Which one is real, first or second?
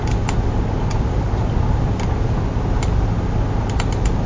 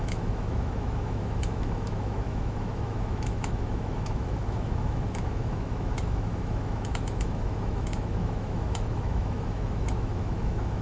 first